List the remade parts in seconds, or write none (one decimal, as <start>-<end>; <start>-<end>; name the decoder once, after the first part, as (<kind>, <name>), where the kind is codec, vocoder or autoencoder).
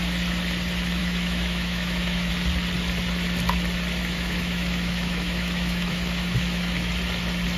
1.0-2.3 (autoencoder, DAC-VAE); 4.0-6.9